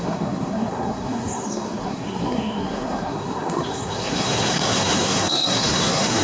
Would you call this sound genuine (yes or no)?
no